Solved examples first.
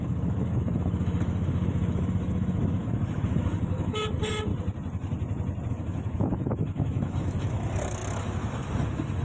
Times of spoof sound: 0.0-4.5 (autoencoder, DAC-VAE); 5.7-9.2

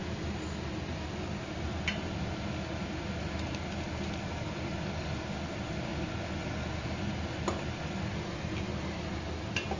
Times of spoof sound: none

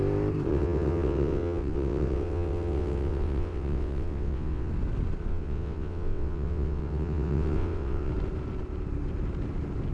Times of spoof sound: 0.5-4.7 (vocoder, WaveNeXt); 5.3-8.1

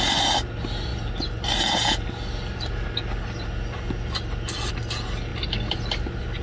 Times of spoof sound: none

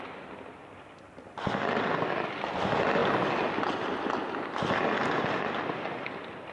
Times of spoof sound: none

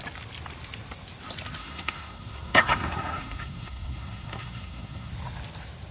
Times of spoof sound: 1.6-5.1 (codec, SNAC)